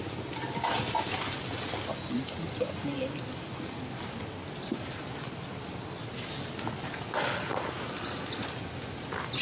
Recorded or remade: recorded